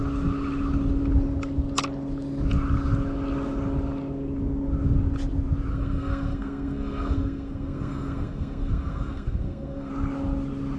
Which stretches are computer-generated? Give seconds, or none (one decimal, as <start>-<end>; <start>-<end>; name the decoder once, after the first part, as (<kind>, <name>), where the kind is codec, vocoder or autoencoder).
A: 5.7-9.9 (codec, SNAC)